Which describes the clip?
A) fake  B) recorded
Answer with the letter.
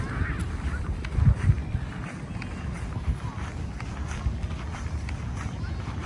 B